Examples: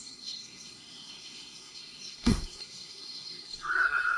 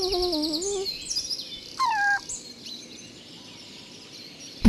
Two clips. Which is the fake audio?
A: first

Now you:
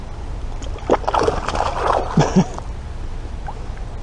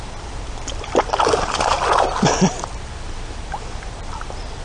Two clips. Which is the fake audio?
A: second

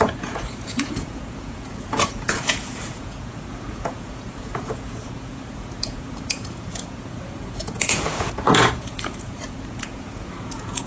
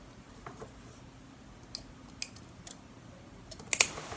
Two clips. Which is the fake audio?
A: first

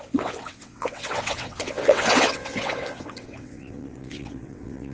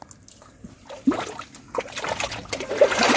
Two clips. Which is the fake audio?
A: first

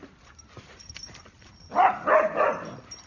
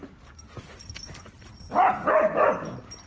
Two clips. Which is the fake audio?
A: first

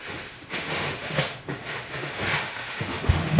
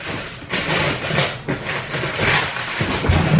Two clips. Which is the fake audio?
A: first